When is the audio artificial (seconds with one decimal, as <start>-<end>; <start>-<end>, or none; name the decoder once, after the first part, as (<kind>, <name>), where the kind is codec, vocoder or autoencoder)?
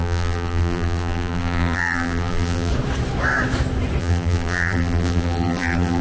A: 0.0-2.7 (vocoder, BigVGAN v2); 4.0-6.0